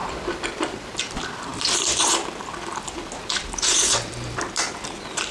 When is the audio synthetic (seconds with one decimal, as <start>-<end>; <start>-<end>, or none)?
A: 0.0-1.0